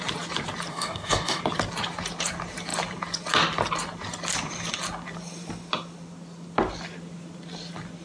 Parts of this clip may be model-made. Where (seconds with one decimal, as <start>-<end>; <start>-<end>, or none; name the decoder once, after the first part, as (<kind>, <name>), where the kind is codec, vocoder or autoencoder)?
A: 0.7-1.4 (codec, DAC)